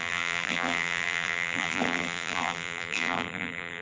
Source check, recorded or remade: remade